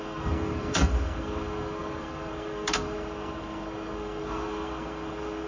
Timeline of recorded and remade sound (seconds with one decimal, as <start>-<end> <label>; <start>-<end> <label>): 0.0-5.5 remade